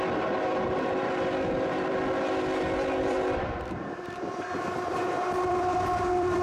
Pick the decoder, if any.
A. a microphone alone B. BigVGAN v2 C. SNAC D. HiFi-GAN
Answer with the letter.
B